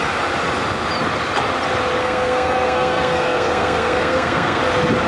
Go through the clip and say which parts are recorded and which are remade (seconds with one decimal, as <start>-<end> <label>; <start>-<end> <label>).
0.0-2.0 recorded; 2.0-4.6 remade; 4.6-5.1 recorded